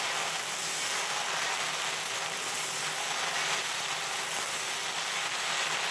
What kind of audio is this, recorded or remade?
remade